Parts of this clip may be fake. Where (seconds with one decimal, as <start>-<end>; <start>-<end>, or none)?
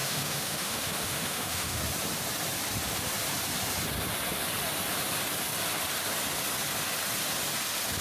0.0-1.8